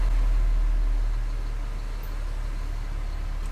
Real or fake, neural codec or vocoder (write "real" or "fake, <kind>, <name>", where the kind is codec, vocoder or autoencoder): real